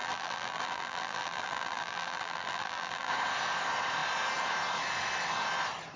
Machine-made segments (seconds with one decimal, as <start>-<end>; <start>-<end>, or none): 0.0-3.1